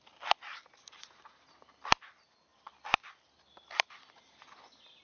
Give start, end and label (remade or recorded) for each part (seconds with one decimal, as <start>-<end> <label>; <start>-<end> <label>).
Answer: 0.0-5.0 recorded